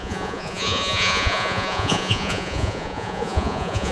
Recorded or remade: remade